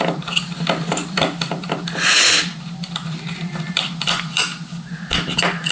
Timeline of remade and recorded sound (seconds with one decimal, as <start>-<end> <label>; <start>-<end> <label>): 0.0-1.0 recorded; 1.0-4.4 remade; 4.4-5.7 recorded

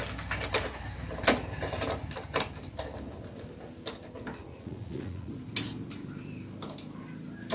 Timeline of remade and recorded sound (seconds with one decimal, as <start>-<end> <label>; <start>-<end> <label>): 0.0-4.4 recorded; 4.4-5.3 remade; 5.3-7.5 recorded

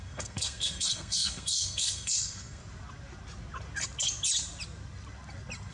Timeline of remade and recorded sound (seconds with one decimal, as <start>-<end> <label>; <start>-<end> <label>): 0.0-2.6 remade; 2.6-5.7 recorded

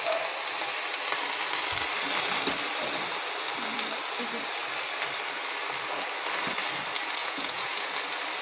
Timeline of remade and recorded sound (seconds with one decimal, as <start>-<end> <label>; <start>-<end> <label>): 0.0-7.2 recorded; 7.2-7.9 remade; 7.9-8.4 recorded

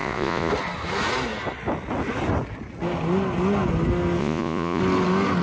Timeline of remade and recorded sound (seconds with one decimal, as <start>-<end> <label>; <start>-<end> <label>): 0.0-0.5 remade; 0.5-4.2 recorded; 4.2-4.8 remade; 4.8-5.4 recorded